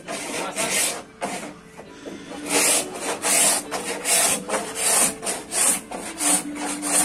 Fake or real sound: real